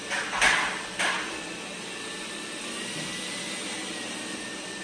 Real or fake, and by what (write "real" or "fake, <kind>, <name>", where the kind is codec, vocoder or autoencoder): real